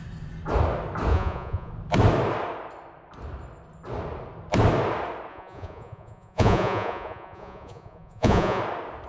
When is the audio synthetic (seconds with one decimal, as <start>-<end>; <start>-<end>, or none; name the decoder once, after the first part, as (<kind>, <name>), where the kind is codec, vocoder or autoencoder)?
1.1-1.7 (vocoder, Vocos); 5.3-8.6